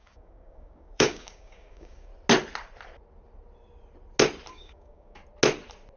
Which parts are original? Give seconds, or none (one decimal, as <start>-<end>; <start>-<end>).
2.1-4.5; 5.2-6.0